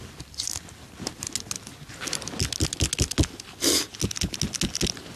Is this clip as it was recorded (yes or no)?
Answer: yes